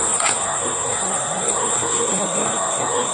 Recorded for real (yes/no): no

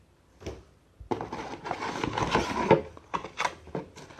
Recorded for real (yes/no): yes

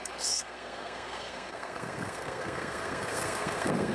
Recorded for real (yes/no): no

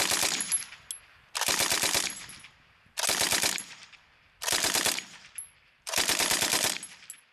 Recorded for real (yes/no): yes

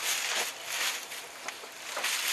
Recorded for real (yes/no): yes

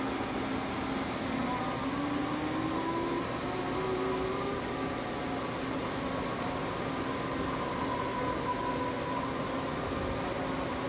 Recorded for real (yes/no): yes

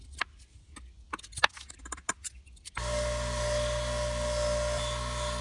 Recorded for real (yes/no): yes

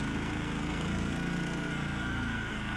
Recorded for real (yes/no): no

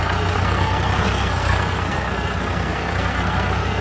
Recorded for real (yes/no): no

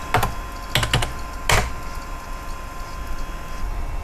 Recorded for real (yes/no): yes